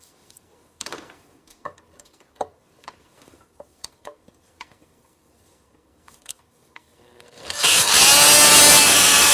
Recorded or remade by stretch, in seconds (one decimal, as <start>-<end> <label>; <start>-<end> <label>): 0.0-7.9 remade; 7.9-8.8 recorded; 8.8-9.3 remade